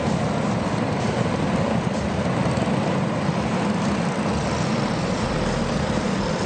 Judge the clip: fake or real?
real